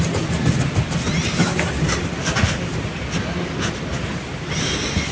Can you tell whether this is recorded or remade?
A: recorded